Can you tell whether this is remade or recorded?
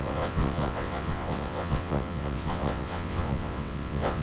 remade